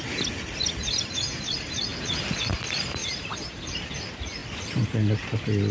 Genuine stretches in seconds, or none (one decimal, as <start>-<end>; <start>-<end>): 0.0-3.0; 3.9-4.4; 5.1-5.7